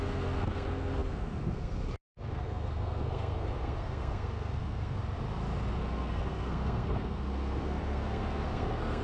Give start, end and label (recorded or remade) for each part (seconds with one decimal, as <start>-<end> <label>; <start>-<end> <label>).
0.0-5.0 remade; 5.0-5.8 recorded; 5.8-9.0 remade